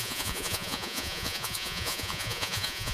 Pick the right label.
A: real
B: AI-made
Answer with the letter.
B